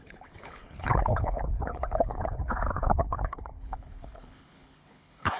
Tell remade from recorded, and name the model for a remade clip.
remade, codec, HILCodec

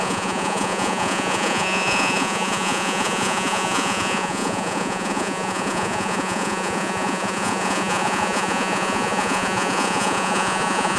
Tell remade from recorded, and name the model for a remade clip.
remade, vocoder, Vocos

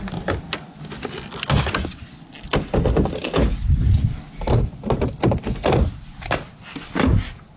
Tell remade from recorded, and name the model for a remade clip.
recorded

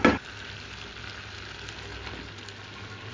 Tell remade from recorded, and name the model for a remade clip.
recorded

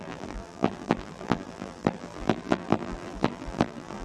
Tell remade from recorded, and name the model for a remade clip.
remade, vocoder, BigVGAN v2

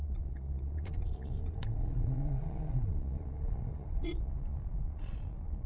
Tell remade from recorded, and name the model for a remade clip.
remade, vocoder, Vocos